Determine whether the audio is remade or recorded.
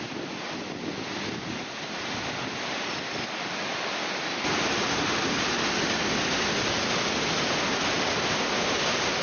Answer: recorded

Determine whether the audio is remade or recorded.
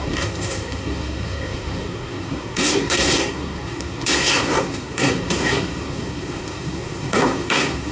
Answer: remade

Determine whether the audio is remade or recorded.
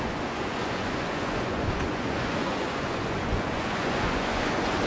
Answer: remade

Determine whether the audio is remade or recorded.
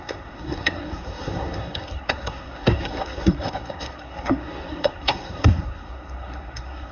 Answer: remade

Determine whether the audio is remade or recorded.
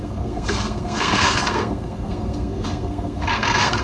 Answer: remade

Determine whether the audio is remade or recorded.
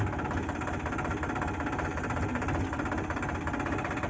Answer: recorded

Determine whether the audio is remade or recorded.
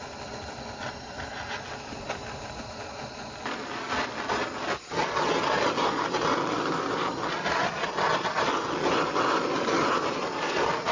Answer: recorded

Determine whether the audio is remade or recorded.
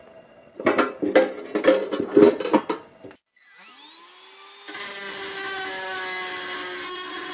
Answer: recorded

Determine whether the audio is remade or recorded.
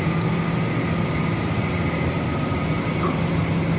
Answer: recorded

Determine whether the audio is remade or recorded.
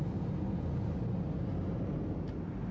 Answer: recorded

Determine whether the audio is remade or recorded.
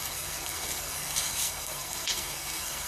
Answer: remade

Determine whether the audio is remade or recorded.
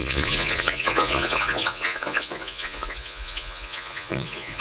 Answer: remade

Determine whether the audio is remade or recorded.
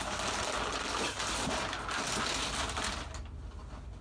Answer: recorded